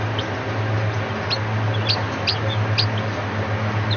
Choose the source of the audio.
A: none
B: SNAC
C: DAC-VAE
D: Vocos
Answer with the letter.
A